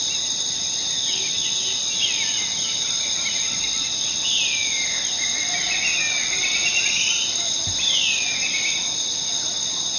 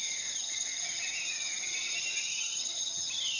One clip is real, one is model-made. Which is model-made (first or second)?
second